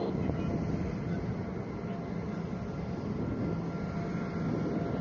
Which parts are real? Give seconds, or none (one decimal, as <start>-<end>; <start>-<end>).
0.0-5.0